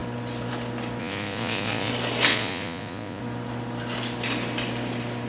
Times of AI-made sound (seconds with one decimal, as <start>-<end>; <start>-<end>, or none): 1.0-1.9; 2.3-3.2